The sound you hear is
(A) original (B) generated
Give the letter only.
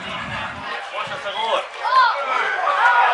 B